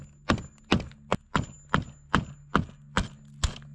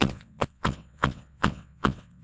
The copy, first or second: second